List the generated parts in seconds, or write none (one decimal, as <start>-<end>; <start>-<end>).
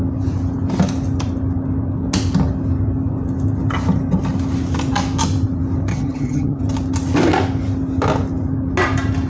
5.9-6.6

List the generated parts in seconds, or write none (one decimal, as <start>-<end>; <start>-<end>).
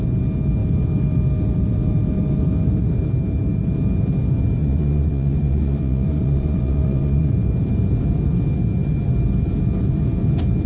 4.6-7.3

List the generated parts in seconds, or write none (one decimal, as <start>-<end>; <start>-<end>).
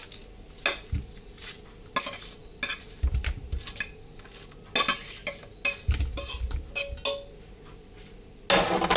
none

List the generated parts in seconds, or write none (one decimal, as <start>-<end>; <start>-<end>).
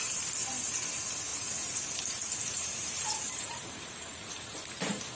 1.3-4.3